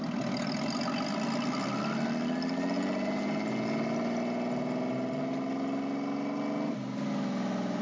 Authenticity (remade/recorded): recorded